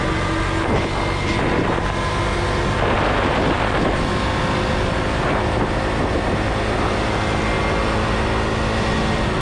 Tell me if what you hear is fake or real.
real